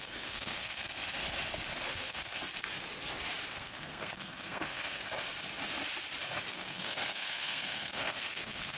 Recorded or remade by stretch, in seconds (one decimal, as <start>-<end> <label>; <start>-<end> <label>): 0.0-0.9 remade; 0.9-1.9 recorded; 1.9-2.4 remade; 2.4-3.5 recorded; 3.5-5.0 remade; 5.0-6.5 recorded; 6.5-8.8 remade